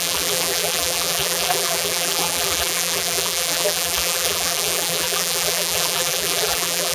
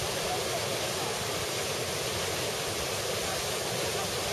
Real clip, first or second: second